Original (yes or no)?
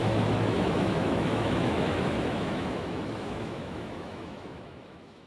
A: no